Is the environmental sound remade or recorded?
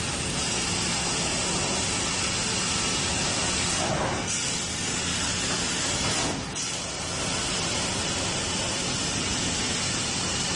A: recorded